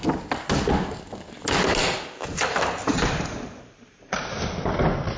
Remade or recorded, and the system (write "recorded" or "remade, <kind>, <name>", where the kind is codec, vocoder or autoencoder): recorded